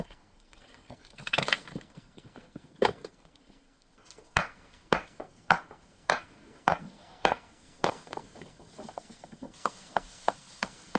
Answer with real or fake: fake